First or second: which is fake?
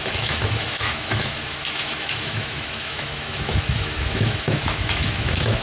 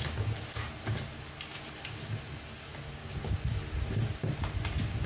first